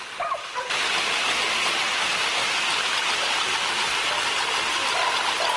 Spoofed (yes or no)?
no